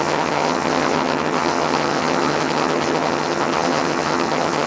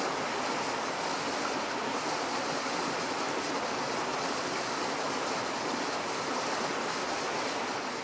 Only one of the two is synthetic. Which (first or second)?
first